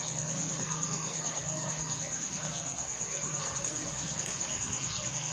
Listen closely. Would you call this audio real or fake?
fake